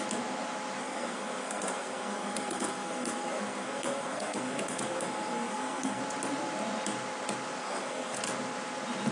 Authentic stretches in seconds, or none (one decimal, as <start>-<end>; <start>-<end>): 0.0-0.8; 6.0-7.6; 8.2-9.1